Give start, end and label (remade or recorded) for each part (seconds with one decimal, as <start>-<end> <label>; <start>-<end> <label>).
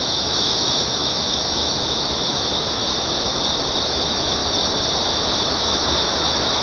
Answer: 0.0-3.3 remade; 3.3-3.9 recorded; 3.9-4.4 remade; 4.4-5.1 recorded; 5.1-6.6 remade